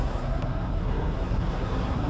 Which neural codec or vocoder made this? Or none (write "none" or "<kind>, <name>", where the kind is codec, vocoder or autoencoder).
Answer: codec, SNAC